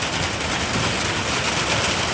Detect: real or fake real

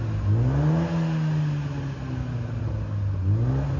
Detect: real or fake real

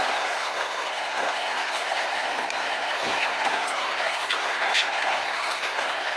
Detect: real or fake fake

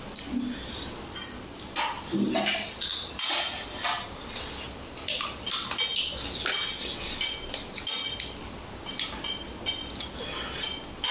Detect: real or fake real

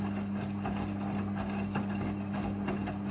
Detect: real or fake real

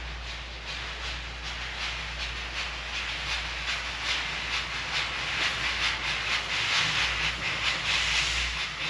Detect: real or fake real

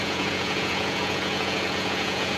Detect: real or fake fake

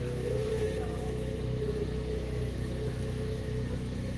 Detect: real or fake fake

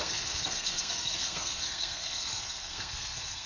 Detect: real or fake fake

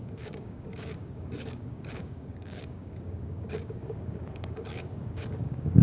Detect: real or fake fake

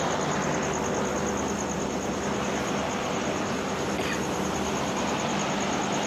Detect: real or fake real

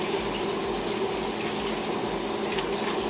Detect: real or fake real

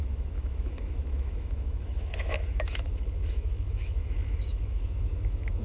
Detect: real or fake fake